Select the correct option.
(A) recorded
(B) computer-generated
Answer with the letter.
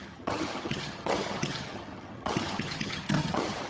B